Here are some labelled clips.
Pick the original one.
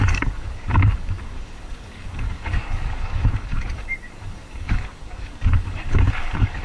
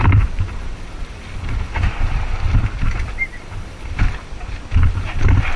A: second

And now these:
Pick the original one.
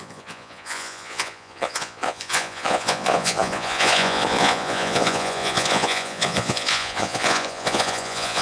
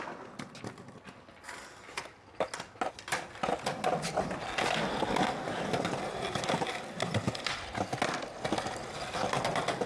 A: second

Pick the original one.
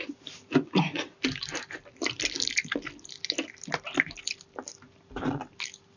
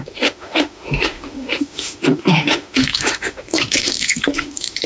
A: first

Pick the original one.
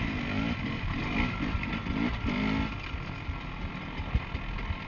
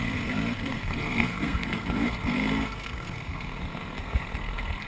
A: first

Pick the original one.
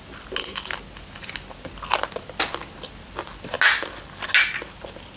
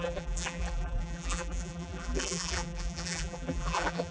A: first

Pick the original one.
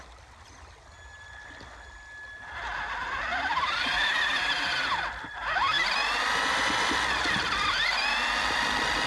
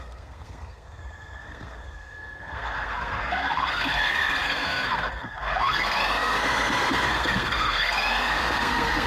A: first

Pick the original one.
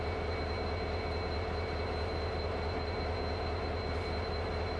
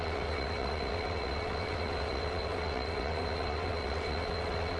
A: first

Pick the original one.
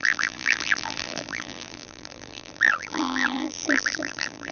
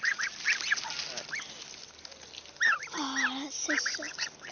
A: second